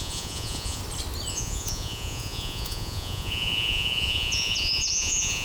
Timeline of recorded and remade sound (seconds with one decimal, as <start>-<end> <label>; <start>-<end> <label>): 0.0-0.8 remade; 0.8-1.3 recorded; 1.3-5.4 remade